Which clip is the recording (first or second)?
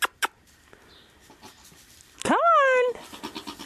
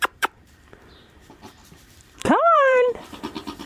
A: first